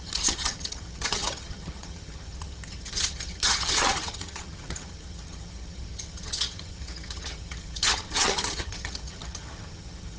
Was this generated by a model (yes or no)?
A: yes